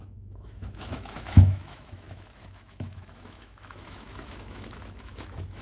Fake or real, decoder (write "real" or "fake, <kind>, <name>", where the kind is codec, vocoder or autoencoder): fake, autoencoder, DAC-VAE